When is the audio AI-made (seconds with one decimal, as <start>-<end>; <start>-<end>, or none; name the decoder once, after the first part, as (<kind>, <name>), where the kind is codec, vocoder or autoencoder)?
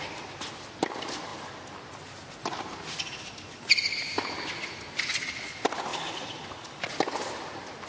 none